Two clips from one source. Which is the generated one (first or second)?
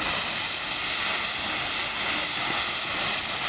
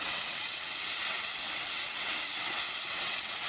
second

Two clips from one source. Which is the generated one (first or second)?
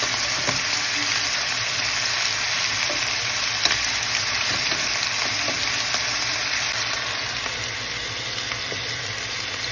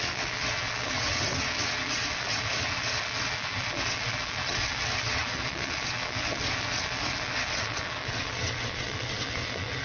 second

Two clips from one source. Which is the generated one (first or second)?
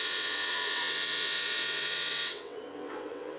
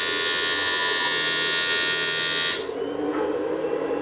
first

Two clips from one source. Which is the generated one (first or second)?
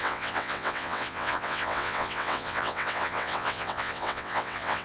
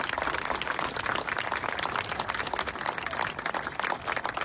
first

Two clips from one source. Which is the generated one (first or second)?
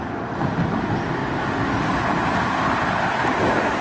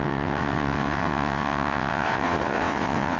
second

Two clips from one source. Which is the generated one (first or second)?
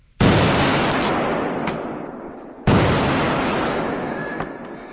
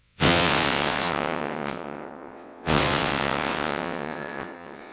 second